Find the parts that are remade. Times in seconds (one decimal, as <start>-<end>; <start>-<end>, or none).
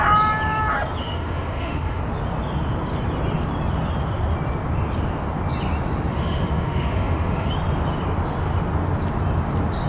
1.0-2.0; 6.1-7.5